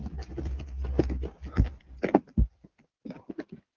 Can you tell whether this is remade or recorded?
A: recorded